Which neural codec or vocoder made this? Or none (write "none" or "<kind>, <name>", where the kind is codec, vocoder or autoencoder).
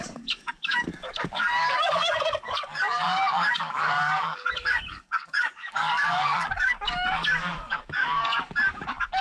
codec, DAC